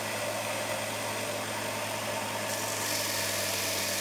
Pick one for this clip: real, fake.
real